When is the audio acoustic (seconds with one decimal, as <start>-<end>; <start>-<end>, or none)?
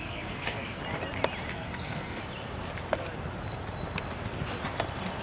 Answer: 0.8-1.5; 2.2-5.2